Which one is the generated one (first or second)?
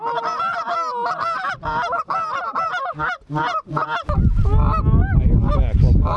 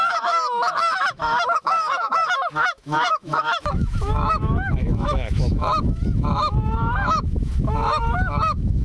second